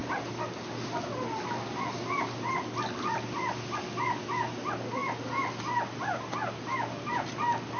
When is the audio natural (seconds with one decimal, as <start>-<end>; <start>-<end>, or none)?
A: 0.0-7.8